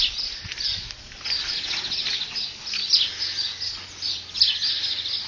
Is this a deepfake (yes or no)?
no